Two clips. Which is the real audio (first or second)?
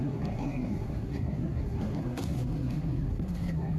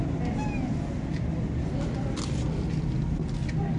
second